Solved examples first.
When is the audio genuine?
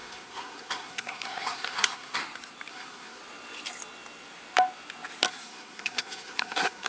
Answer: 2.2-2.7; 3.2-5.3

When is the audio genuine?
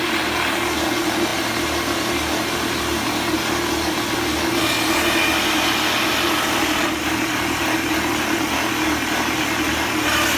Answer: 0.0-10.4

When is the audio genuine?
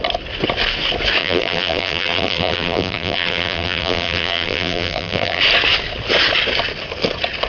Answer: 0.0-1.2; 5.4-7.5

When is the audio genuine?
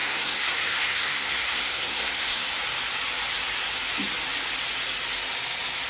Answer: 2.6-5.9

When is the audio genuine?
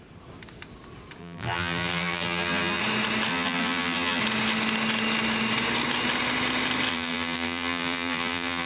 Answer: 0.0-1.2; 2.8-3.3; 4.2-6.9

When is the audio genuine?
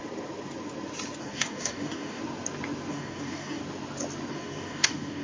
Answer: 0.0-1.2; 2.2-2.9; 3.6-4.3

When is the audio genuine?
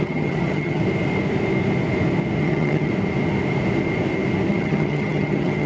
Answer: 0.8-2.4; 2.9-4.5